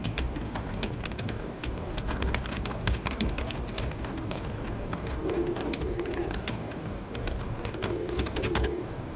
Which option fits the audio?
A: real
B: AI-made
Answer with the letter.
B